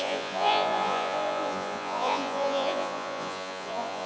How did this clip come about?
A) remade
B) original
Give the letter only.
A